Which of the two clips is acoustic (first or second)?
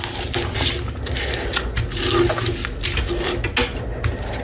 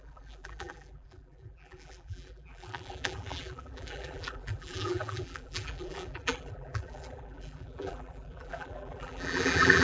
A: first